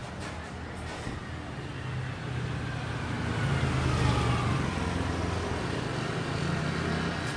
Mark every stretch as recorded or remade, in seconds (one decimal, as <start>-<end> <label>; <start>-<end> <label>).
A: 0.0-7.4 recorded